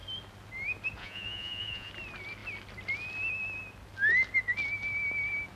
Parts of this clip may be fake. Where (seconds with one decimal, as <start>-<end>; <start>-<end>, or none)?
1.0-1.9